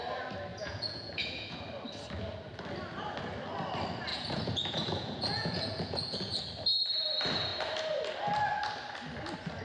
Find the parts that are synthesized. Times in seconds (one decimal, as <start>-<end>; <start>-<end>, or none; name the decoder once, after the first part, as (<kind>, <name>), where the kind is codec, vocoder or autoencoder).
0.5-1.6 (vocoder, Vocos); 4.1-6.4